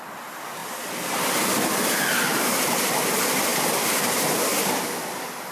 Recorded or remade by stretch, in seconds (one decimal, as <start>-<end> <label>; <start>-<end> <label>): 0.0-0.6 recorded; 0.6-1.5 remade; 1.5-3.5 recorded; 3.5-4.6 remade; 4.6-5.5 recorded